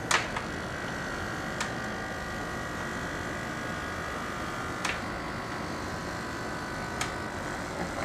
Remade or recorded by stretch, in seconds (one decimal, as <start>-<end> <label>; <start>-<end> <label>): 0.0-6.0 recorded; 6.0-6.6 remade; 6.6-8.0 recorded